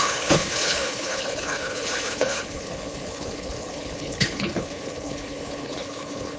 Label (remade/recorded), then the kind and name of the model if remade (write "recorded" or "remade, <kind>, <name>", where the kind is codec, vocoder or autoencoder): remade, codec, HILCodec